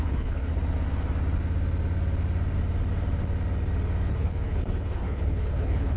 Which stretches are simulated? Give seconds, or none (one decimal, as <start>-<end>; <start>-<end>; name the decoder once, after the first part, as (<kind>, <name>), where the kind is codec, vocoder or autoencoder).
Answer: 0.0-0.5 (codec, HILCodec); 4.1-6.0